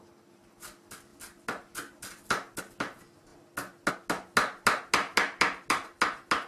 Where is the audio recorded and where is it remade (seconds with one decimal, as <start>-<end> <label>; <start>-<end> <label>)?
0.0-6.5 recorded